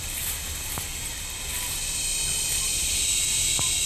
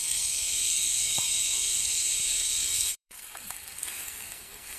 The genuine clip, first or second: first